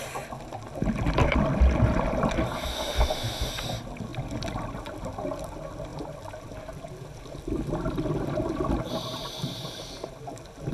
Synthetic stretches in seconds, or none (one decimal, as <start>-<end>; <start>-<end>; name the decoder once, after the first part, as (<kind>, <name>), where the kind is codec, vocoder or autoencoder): 2.7-3.5 (autoencoder, DAC-VAE)